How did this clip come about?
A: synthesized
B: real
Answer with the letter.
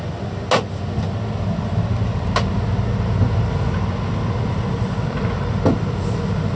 B